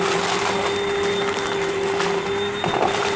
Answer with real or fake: real